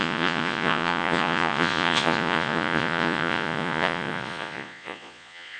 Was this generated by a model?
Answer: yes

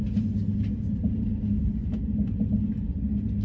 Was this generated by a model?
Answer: no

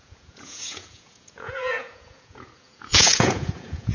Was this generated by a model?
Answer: yes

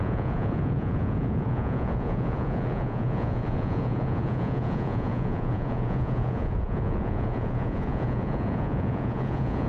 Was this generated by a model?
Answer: yes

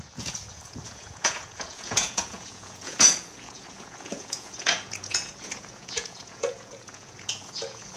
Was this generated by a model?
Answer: yes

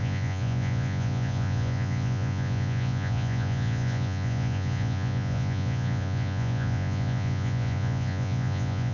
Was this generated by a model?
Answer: yes